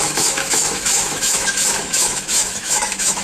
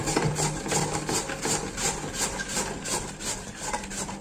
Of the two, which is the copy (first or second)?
first